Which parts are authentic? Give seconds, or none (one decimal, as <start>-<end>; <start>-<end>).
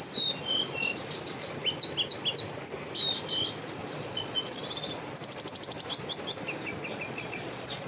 0.0-3.8; 4.6-6.9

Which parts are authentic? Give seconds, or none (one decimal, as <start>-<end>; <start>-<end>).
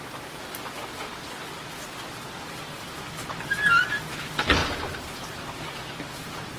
0.0-4.6; 5.1-6.6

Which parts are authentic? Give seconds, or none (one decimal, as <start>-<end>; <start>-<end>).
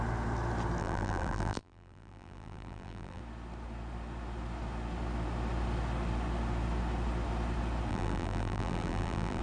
0.0-0.8; 3.2-7.9